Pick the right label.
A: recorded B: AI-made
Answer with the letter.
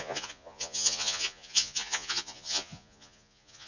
B